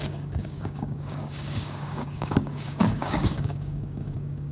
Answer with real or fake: fake